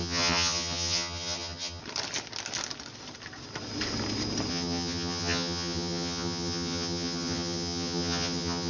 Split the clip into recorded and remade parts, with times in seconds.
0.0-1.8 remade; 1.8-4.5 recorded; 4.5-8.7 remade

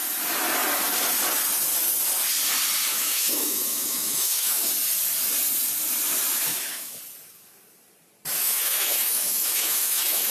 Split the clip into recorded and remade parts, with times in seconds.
0.0-2.9 recorded; 2.9-4.7 remade; 4.7-6.5 recorded; 6.5-7.0 remade; 7.0-8.4 recorded; 8.4-10.3 remade

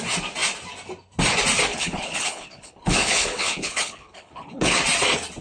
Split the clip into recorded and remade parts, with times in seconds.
0.0-1.7 recorded; 1.7-4.8 remade; 4.8-5.4 recorded

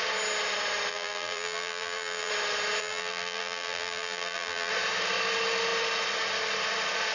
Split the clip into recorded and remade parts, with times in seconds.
0.0-0.9 recorded; 0.9-2.3 remade; 2.3-2.8 recorded; 2.8-4.7 remade; 4.7-7.1 recorded